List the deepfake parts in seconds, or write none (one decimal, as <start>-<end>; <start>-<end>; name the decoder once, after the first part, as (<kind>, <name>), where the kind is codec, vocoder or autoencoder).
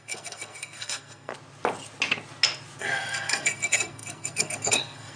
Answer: 0.0-1.3 (codec, SNAC); 2.8-5.2